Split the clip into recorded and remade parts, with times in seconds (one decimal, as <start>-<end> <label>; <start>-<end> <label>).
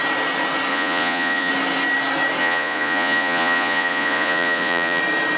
0.0-0.7 recorded; 0.7-1.5 remade; 1.5-2.4 recorded; 2.4-5.0 remade; 5.0-5.4 recorded